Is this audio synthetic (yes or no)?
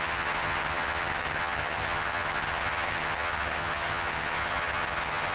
yes